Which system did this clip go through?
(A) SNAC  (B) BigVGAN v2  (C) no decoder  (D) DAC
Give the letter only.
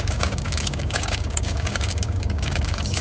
D